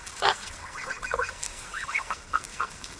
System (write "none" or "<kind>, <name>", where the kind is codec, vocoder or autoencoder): codec, SNAC